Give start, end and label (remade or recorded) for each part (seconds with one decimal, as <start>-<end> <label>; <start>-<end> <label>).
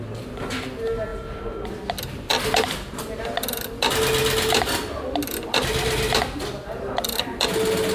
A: 0.0-7.9 recorded